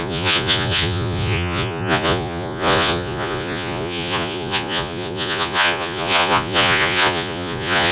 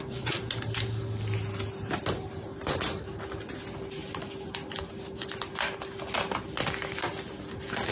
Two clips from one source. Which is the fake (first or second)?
first